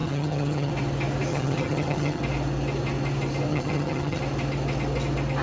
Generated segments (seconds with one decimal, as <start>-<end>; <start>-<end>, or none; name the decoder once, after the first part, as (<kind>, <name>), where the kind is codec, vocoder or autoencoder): 0.0-0.7 (vocoder, HiFi-GAN); 1.3-2.2; 3.5-4.2